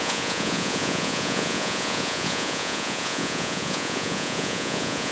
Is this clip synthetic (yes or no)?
yes